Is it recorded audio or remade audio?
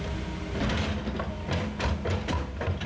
recorded